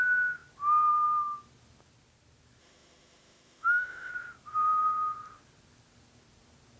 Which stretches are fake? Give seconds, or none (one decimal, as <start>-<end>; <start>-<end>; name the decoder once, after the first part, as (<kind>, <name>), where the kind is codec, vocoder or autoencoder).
2.6-4.1 (autoencoder, DAC-VAE)